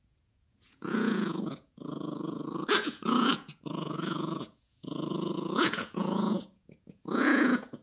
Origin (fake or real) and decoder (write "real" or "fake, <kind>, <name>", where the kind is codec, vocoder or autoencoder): fake, vocoder, Vocos